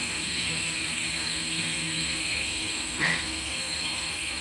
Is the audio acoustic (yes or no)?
no